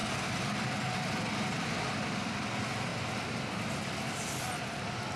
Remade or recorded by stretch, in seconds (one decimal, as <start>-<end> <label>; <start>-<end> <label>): 0.0-5.2 recorded